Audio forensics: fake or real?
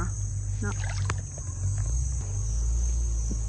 real